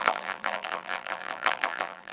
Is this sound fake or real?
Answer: fake